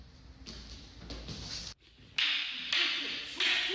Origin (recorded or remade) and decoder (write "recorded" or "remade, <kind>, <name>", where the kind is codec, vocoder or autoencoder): recorded